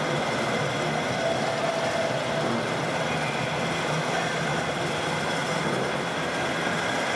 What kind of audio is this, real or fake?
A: real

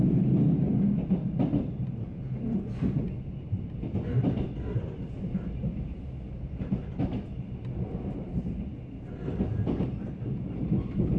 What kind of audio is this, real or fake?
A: real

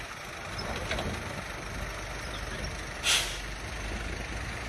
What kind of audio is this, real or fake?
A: real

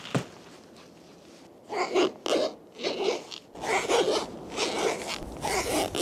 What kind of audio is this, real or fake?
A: real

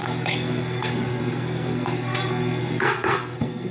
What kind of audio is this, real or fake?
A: fake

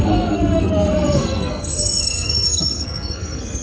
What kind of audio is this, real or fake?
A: fake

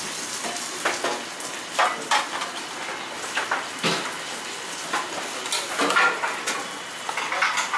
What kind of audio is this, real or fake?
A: real